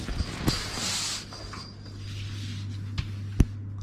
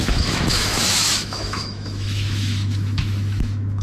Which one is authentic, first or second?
first